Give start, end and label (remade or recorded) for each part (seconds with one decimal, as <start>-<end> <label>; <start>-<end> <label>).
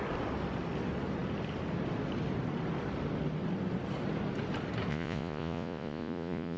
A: 0.0-4.9 recorded; 4.9-6.6 remade